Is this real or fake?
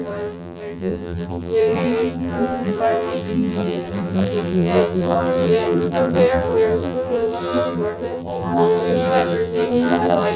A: fake